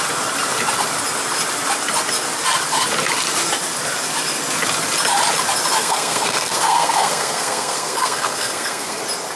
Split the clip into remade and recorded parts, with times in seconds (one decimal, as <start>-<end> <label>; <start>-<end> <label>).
0.0-5.8 recorded; 5.8-9.0 remade; 9.0-9.4 recorded